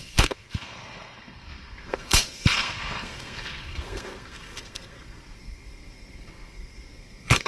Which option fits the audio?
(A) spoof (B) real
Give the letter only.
A